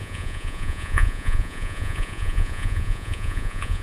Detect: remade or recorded remade